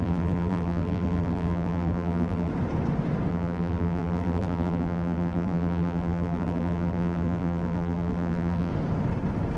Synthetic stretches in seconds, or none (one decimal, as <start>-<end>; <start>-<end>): 0.0-2.5; 3.3-8.7

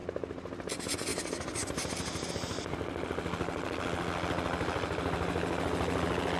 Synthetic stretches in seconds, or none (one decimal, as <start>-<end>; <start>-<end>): none

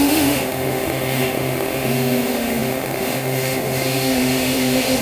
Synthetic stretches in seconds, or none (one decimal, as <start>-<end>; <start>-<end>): 0.0-5.0

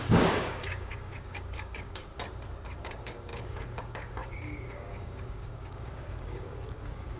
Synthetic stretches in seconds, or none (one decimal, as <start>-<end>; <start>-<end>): 0.0-2.1; 2.8-7.2

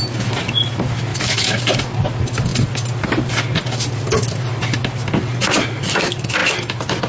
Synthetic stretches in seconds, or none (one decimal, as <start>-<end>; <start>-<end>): 1.1-1.6

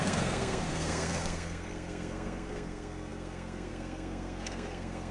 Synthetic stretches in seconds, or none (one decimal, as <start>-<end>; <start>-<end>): 0.0-5.1